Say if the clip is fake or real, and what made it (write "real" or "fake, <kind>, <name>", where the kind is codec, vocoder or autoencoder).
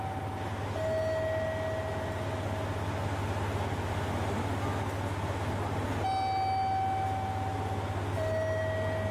real